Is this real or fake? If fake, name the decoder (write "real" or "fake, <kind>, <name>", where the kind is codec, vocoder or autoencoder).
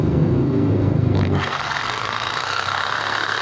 fake, codec, SNAC